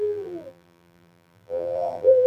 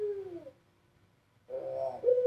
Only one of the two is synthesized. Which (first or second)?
first